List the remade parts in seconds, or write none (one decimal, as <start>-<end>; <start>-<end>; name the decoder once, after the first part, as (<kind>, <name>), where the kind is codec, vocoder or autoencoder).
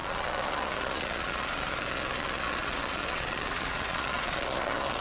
0.0-5.0 (vocoder, Vocos)